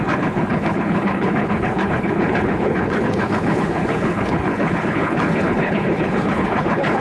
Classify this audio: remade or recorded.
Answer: remade